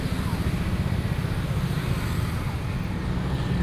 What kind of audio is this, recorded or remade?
recorded